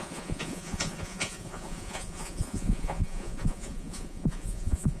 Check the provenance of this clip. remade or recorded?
remade